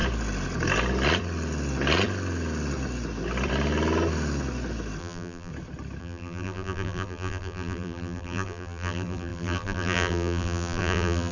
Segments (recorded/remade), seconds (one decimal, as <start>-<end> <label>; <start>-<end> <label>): 0.0-5.0 recorded; 5.0-5.5 remade; 5.5-6.0 recorded; 6.0-11.3 remade